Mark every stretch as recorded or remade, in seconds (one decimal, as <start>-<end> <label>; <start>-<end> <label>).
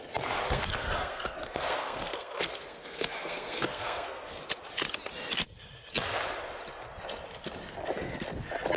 0.0-0.4 recorded; 0.4-4.4 remade; 4.4-8.8 recorded